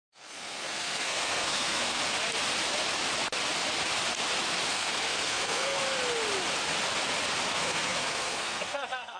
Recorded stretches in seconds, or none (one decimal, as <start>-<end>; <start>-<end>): 2.0-4.7; 5.8-7.5